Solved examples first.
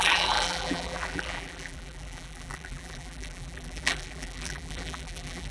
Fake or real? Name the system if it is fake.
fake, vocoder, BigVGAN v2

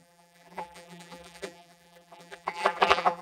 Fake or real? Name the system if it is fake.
fake, vocoder, BigVGAN v2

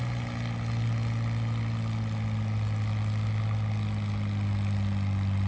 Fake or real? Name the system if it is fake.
real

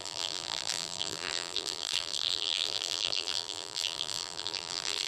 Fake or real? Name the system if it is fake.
fake, vocoder, BigVGAN v2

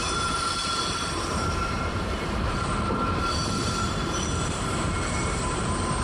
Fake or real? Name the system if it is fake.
fake, vocoder, BigVGAN v2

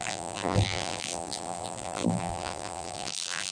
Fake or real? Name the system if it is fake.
fake, vocoder, BigVGAN v2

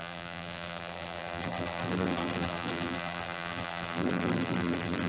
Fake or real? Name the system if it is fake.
fake, vocoder, BigVGAN v2